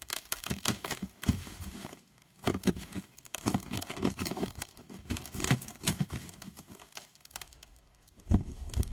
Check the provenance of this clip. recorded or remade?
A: remade